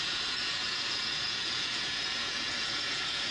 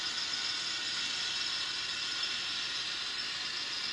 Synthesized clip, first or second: first